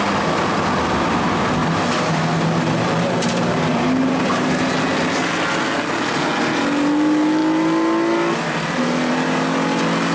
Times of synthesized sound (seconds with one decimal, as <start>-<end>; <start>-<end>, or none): 1.6-4.8